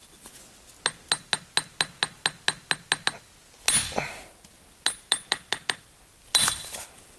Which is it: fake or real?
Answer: real